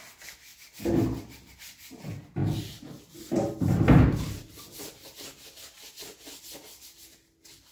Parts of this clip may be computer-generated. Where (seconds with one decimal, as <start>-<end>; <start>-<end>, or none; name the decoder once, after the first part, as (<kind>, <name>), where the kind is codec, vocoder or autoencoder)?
none

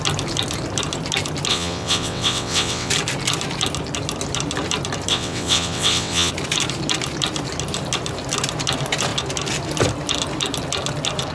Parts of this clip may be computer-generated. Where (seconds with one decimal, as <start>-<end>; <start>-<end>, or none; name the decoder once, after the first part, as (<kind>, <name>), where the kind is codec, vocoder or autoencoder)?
1.5-2.9 (vocoder, WaveNeXt); 5.1-6.3

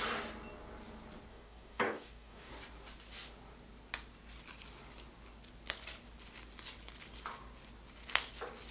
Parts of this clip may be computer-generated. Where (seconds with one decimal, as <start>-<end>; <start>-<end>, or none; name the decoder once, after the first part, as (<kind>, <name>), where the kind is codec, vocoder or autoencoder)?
1.3-2.5 (codec, DAC)

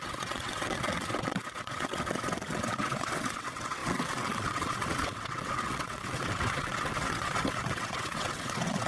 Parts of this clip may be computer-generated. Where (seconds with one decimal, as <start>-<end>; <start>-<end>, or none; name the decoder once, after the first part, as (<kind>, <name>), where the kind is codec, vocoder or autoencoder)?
0.0-8.9 (vocoder, WaveNeXt)

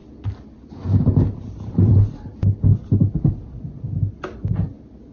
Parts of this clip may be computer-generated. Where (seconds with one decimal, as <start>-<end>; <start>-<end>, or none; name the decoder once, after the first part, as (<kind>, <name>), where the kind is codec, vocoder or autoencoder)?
none

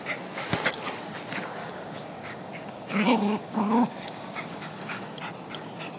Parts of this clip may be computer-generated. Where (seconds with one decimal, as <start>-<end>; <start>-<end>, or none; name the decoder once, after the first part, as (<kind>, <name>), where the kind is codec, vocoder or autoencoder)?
1.6-5.2 (codec, DAC)

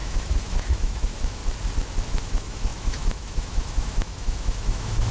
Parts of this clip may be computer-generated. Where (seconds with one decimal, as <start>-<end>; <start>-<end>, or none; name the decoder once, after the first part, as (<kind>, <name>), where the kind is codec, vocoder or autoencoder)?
0.0-1.4 (autoencoder, DAC-VAE); 2.1-5.1